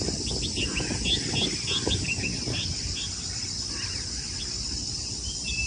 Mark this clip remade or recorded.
recorded